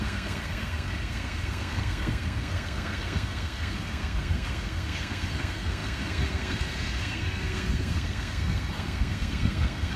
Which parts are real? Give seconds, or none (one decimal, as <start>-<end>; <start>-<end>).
none